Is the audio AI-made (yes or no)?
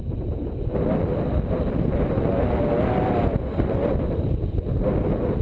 no